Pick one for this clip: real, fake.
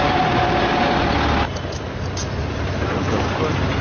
real